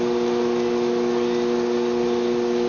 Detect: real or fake real